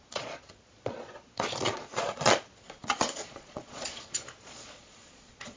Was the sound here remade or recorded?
remade